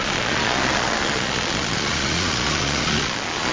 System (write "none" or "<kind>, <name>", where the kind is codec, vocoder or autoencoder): vocoder, Vocos